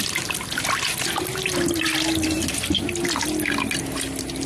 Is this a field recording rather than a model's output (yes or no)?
yes